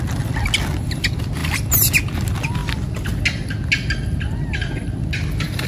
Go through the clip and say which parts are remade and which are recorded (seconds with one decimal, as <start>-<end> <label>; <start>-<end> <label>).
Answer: 0.0-5.7 recorded

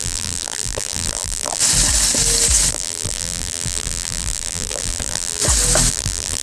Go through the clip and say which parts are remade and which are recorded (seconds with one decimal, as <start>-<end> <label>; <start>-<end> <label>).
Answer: 0.0-1.6 remade; 1.6-2.7 recorded; 2.7-5.4 remade; 5.4-5.9 recorded; 5.9-6.4 remade

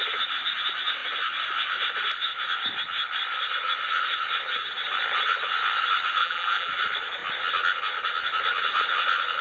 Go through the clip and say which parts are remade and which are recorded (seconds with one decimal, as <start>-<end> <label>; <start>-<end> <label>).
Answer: 0.0-6.2 recorded; 6.2-6.7 remade; 6.7-9.4 recorded

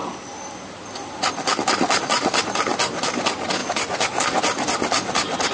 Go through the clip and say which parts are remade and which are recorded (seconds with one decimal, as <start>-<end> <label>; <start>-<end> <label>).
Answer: 0.0-2.0 remade; 2.0-2.7 recorded; 2.7-3.2 remade; 3.2-3.6 recorded; 3.6-4.2 remade; 4.2-5.5 recorded

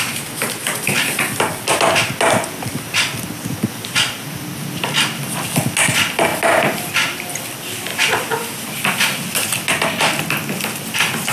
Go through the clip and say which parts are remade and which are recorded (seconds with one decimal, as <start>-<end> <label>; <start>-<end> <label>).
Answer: 0.0-11.3 recorded

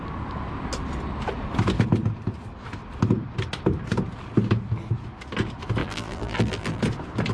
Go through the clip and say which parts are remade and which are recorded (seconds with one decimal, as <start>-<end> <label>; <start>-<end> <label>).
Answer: 0.0-5.8 recorded; 5.8-6.8 remade; 6.8-7.3 recorded

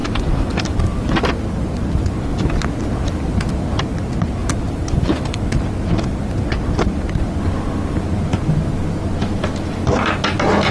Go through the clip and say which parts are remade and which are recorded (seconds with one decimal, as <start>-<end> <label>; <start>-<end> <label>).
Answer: 0.0-1.3 remade; 1.3-4.4 recorded; 4.4-5.5 remade; 5.5-10.7 recorded